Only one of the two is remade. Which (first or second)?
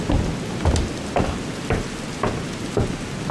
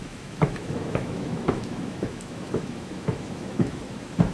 second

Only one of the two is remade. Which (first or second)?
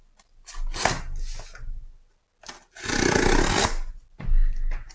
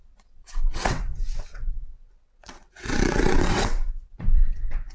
second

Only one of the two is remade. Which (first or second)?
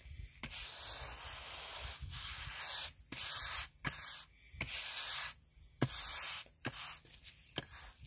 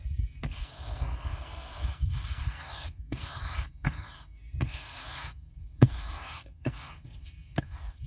second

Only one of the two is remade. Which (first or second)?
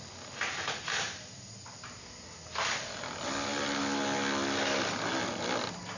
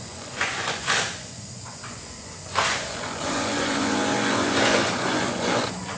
second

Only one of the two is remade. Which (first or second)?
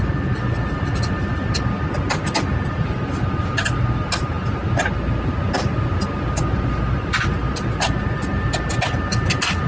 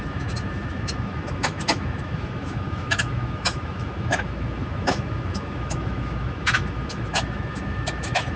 second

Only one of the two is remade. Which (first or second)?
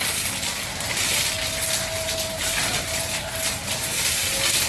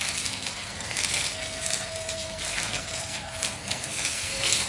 second